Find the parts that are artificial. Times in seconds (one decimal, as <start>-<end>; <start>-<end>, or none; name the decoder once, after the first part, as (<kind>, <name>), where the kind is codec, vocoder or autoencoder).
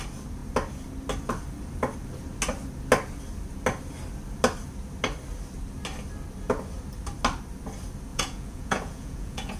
8.1-9.6 (vocoder, Vocos)